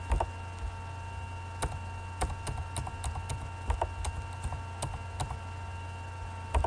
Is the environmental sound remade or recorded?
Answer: recorded